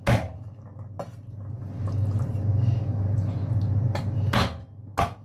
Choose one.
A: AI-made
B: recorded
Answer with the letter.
B